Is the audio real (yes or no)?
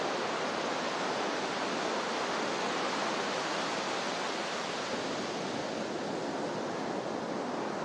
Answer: yes